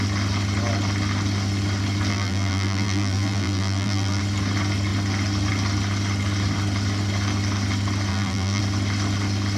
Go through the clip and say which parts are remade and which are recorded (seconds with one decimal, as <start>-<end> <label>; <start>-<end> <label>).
0.0-2.1 recorded; 2.1-4.2 remade; 4.2-8.1 recorded; 8.1-8.6 remade; 8.6-9.6 recorded